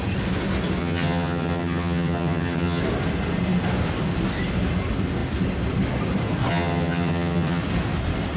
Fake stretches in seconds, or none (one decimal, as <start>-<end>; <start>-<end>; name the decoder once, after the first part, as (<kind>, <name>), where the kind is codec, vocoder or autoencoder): 0.8-2.8 (vocoder, HiFi-GAN); 6.5-7.6